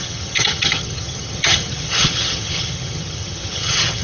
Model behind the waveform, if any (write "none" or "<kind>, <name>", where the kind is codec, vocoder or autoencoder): vocoder, HiFi-GAN